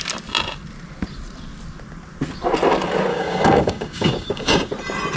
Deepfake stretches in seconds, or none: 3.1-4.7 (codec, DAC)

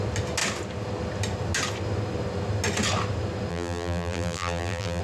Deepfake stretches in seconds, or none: 3.5-5.0 (vocoder, BigVGAN v2)

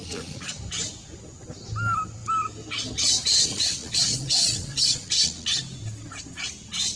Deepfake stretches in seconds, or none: 0.0-0.5 (vocoder, Vocos); 3.4-5.6

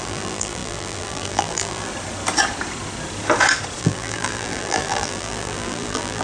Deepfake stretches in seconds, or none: 0.0-1.9 (vocoder, BigVGAN v2); 3.8-6.2

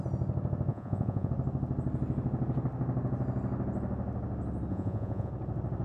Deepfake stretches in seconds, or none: 0.7-1.3 (vocoder, Vocos); 4.7-5.3

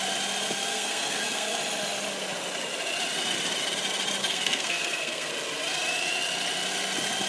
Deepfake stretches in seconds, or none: 0.7-1.6 (codec, SNAC); 4.2-5.3